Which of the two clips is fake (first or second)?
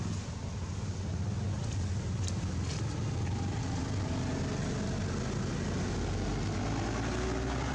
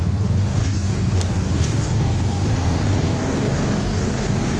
second